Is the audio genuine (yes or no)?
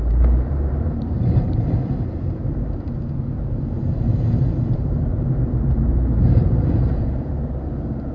no